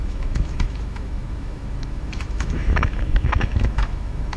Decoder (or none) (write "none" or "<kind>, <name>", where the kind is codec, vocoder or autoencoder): autoencoder, DAC-VAE